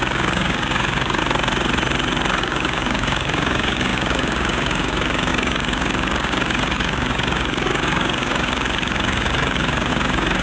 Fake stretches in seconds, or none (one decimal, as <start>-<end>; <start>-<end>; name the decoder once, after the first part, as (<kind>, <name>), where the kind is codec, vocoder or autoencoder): 0.0-1.2 (codec, DAC); 2.4-10.4